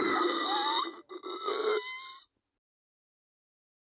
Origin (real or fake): real